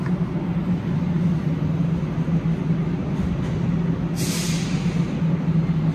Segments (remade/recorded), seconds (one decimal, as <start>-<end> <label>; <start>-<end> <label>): 0.0-5.9 recorded